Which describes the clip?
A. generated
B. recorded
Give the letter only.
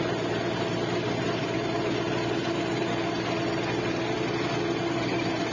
B